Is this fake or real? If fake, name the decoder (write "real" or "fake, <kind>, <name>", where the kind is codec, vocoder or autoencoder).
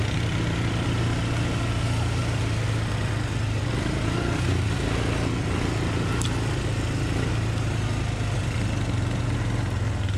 real